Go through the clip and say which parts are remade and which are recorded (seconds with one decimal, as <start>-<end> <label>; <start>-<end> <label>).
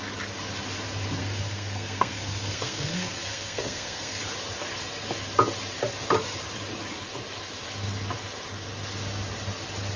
0.0-1.2 recorded; 1.2-4.2 remade; 4.2-10.0 recorded